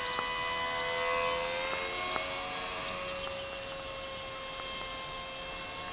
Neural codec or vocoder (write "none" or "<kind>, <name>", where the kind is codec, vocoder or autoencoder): none